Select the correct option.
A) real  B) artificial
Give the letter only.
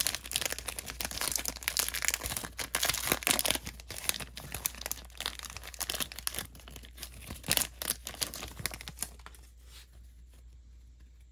A